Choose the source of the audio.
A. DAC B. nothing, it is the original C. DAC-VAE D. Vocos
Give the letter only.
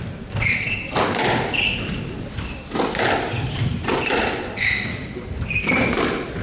B